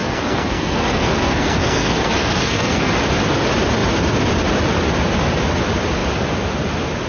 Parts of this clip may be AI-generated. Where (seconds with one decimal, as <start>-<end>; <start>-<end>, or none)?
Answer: 0.0-2.9